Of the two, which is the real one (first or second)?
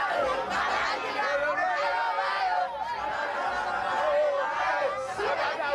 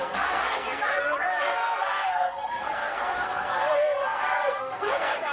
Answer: first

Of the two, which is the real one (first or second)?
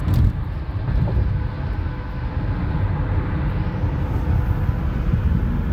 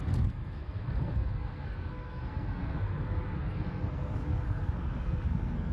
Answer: first